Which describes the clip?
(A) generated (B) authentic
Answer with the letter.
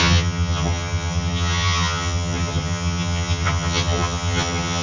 A